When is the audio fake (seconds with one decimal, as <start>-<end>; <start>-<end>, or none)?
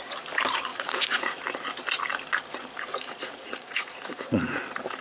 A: 0.7-1.4; 2.9-4.6